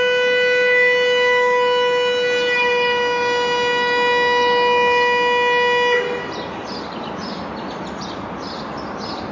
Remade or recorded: recorded